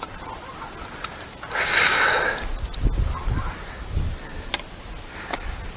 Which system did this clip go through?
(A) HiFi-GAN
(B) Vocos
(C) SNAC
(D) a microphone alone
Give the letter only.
D